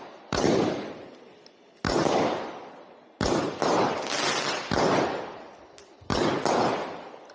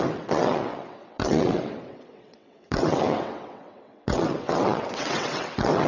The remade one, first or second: second